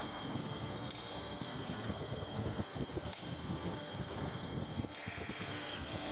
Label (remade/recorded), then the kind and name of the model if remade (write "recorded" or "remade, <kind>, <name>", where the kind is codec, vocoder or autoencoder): remade, codec, SNAC